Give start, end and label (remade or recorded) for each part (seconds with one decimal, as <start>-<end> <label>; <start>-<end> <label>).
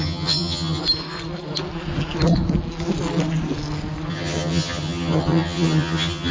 0.0-0.8 remade; 0.8-4.1 recorded; 4.1-6.3 remade